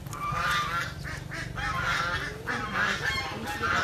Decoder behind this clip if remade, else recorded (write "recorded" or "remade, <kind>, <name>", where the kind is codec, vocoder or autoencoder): recorded